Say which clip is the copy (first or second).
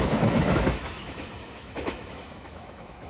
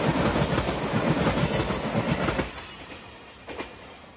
first